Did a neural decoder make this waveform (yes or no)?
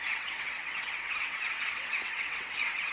yes